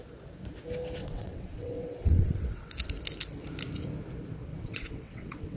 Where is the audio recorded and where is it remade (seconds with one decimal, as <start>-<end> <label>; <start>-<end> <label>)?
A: 0.0-1.0 recorded; 1.0-2.7 remade; 2.7-4.5 recorded; 4.5-5.6 remade